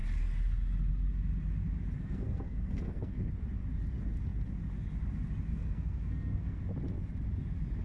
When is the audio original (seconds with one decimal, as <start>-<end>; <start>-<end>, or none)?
0.0-2.0; 3.3-5.5; 6.6-7.8